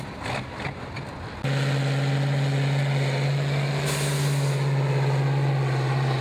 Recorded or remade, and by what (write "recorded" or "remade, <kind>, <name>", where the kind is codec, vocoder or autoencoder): recorded